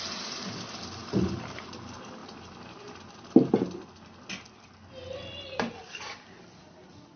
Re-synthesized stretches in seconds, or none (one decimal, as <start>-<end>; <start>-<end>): none